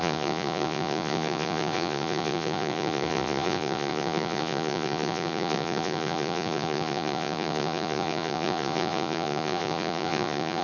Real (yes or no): no